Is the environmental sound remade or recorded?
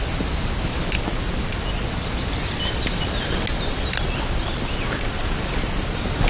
recorded